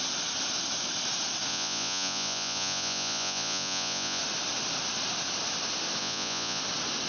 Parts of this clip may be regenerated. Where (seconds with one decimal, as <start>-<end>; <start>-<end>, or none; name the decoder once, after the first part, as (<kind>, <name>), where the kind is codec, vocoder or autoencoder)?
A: 1.5-4.2 (vocoder, Vocos); 6.0-6.6

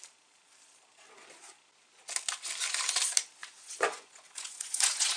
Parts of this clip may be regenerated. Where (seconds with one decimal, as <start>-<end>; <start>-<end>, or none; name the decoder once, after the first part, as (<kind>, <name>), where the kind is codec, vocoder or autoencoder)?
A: 3.4-5.2 (vocoder, Vocos)